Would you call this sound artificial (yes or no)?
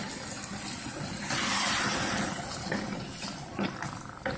no